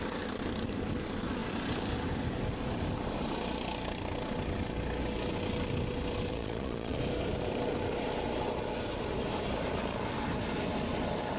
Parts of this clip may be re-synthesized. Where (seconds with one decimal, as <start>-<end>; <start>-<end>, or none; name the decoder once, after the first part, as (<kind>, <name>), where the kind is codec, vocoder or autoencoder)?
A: 6.3-7.0 (vocoder, Vocos)